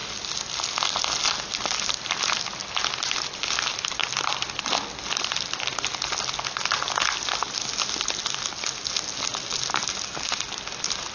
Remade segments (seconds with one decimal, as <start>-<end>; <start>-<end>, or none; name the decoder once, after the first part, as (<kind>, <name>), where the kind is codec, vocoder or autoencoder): none

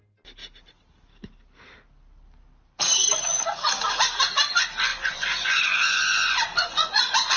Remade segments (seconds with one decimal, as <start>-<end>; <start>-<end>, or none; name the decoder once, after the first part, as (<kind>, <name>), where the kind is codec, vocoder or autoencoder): 4.9-7.4 (vocoder, Vocos)

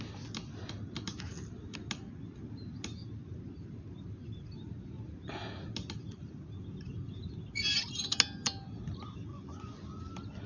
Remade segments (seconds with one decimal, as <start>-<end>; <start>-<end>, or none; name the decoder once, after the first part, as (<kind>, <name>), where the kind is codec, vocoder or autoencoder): 9.3-10.0 (vocoder, Vocos)

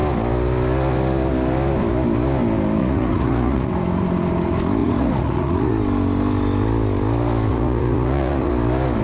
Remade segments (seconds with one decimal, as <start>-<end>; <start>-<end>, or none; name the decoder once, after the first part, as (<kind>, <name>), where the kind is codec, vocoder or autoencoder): 2.8-3.7 (vocoder, Vocos); 4.8-5.7; 7.5-8.5

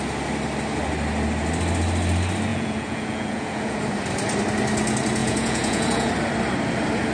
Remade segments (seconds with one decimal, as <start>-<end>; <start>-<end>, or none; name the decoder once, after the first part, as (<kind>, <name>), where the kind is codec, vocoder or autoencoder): 2.5-3.8 (vocoder, Vocos); 5.2-6.1

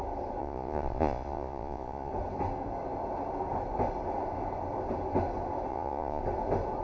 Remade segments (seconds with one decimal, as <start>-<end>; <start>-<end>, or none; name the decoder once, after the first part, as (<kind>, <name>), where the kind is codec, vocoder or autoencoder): 0.4-2.1 (vocoder, Vocos); 5.7-6.2

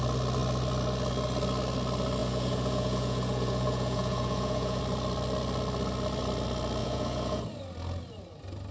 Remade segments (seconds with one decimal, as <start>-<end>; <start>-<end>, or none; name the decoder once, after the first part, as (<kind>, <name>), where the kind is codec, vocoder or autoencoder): 2.2-4.8 (vocoder, Vocos); 6.8-7.4